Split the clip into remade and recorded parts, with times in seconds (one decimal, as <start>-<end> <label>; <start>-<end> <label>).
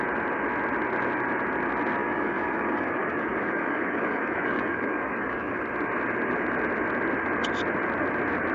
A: 0.0-2.0 recorded; 2.0-5.6 remade; 5.6-8.5 recorded